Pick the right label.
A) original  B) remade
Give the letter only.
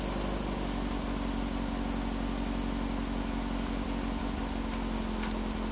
A